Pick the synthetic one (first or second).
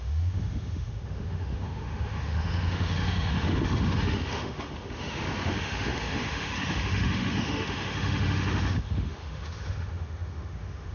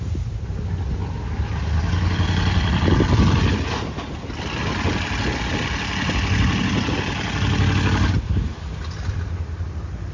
first